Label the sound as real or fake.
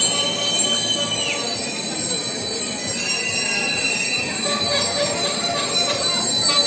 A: real